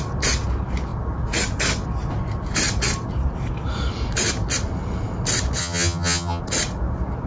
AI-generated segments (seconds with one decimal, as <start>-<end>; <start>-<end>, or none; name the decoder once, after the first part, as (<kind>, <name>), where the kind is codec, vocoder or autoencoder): 5.6-6.4 (vocoder, HiFi-GAN)